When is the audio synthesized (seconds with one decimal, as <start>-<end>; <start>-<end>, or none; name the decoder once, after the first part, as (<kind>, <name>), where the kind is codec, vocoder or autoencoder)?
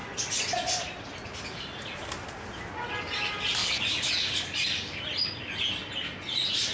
none